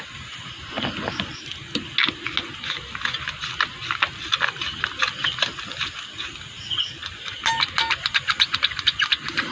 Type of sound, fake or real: real